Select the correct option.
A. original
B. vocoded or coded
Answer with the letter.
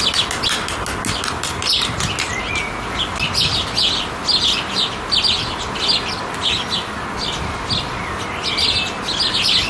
A